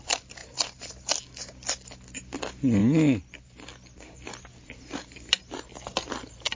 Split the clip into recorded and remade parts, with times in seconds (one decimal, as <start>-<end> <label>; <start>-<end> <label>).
0.0-6.5 recorded